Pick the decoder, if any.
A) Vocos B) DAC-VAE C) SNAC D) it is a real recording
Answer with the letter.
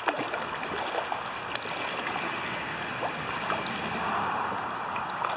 D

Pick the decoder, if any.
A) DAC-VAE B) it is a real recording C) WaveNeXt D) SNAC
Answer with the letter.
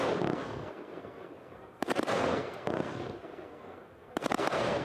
D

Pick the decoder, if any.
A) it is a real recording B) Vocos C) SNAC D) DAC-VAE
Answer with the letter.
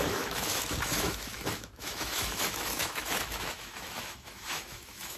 D